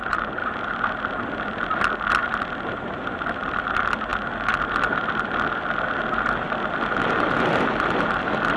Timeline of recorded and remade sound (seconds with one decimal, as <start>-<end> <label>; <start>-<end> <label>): 0.0-8.6 recorded